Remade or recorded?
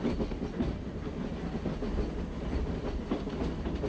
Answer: recorded